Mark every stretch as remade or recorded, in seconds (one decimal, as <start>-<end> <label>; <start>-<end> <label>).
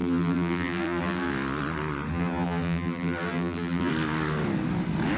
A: 0.0-1.3 remade; 1.3-2.1 recorded; 2.1-3.9 remade; 3.9-5.2 recorded